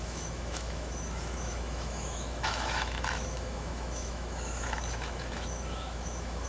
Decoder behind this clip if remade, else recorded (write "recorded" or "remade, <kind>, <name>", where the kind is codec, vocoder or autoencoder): remade, autoencoder, DAC-VAE